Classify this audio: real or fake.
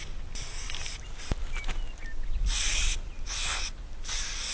real